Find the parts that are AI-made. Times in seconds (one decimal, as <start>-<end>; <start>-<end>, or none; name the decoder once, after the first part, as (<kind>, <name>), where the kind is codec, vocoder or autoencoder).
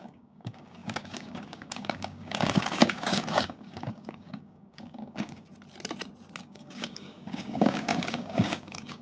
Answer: 0.0-5.5 (codec, DAC); 6.4-9.0